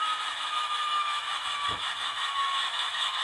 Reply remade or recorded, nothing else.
remade